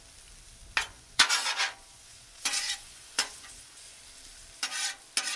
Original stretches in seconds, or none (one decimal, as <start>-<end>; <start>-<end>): 0.0-0.8; 4.0-5.4